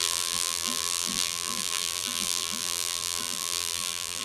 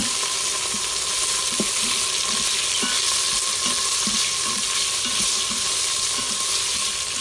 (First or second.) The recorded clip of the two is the second